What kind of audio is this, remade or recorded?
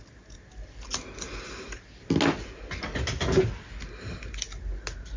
recorded